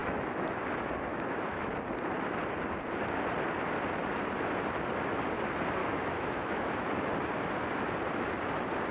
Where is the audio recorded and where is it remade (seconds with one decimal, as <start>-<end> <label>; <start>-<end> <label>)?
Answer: 0.0-0.7 remade; 0.7-1.1 recorded; 1.1-1.6 remade; 1.6-5.8 recorded; 5.8-7.1 remade; 7.1-8.9 recorded